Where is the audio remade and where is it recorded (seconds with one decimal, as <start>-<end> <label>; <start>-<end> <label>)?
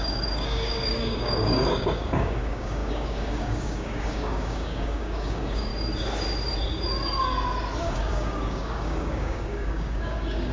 0.0-5.7 remade; 5.7-7.8 recorded; 7.8-10.5 remade